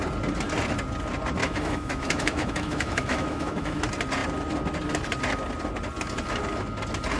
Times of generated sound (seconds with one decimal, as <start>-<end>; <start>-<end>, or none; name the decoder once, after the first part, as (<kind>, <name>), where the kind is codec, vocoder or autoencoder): 1.4-3.8 (autoencoder, DAC-VAE)